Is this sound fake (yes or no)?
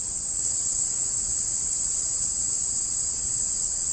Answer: yes